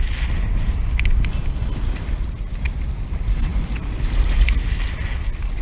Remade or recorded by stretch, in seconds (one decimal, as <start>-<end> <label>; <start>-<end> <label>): 0.0-5.6 recorded